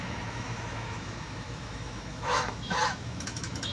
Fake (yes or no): yes